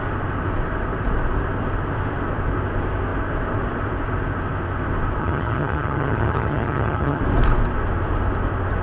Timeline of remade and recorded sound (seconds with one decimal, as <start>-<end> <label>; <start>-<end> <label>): 0.0-5.2 recorded; 5.2-7.2 remade; 7.2-8.8 recorded